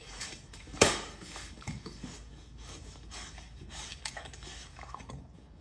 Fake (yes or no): yes